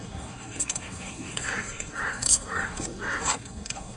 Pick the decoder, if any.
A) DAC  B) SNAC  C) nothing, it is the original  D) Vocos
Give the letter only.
B